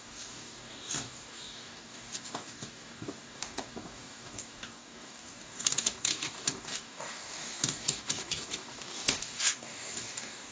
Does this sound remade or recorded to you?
remade